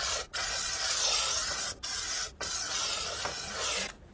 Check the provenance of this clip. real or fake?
real